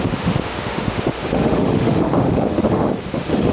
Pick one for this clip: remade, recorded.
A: remade